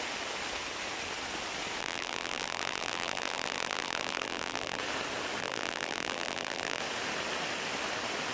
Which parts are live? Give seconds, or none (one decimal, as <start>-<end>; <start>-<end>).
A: 0.0-1.8; 4.8-5.4; 6.8-8.3